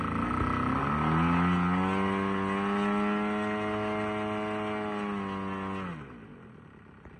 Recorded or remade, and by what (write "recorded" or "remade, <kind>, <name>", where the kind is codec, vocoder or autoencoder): recorded